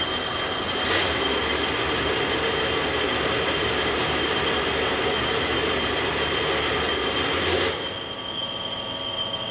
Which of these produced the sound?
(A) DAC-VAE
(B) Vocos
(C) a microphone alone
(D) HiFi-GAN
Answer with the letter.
C